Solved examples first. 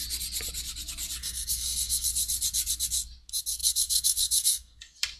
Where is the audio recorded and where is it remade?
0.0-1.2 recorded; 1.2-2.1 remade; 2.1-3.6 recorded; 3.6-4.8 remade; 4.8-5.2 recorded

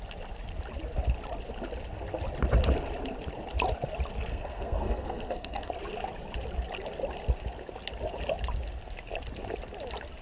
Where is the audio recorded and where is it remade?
0.0-4.3 recorded; 4.3-5.7 remade; 5.7-10.2 recorded

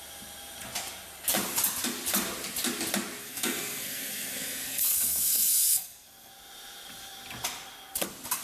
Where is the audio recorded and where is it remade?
0.0-3.2 recorded; 3.2-6.3 remade; 6.3-8.4 recorded

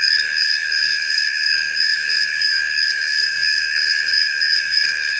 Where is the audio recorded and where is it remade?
0.0-5.2 remade

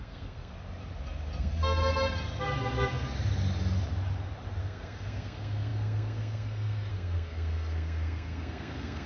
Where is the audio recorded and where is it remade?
0.0-0.5 remade; 0.5-1.4 recorded; 1.4-1.8 remade; 1.8-4.6 recorded; 4.6-9.1 remade